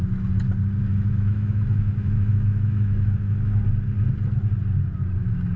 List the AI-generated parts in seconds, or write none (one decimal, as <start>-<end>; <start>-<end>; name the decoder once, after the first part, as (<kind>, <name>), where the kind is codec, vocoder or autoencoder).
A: 0.9-3.6 (autoencoder, DAC-VAE)